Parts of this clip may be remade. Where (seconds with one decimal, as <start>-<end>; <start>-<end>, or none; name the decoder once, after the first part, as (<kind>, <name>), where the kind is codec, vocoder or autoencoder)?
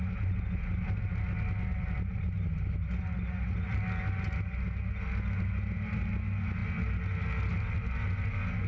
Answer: none